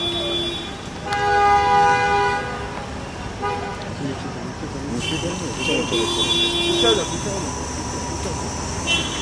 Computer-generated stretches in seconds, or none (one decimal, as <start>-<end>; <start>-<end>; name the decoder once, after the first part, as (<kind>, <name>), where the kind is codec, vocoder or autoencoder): none